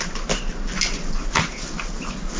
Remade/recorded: recorded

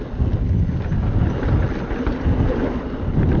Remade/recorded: recorded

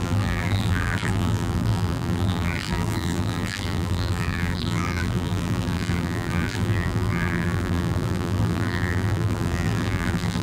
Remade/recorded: remade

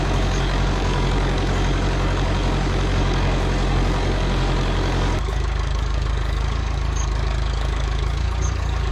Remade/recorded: remade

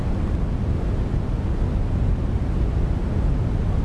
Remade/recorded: recorded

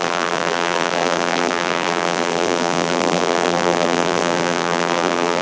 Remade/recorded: remade